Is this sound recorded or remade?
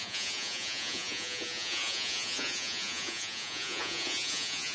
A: remade